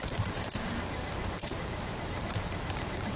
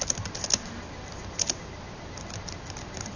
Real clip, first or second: second